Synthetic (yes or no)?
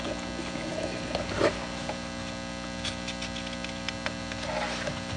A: no